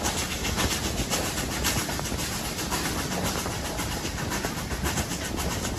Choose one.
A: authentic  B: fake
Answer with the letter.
A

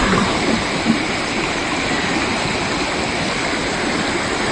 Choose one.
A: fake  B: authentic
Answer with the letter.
B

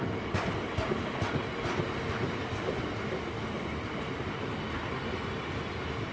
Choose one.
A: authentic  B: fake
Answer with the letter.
A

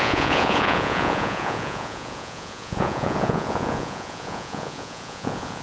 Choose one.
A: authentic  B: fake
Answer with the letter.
B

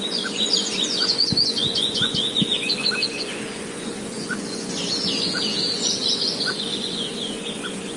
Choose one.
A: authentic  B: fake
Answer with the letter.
B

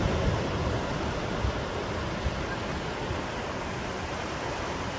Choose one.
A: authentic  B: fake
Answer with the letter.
A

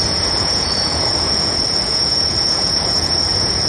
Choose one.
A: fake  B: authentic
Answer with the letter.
A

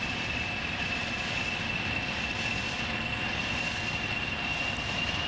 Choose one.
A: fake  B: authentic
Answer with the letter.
B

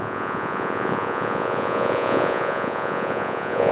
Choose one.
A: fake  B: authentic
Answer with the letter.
A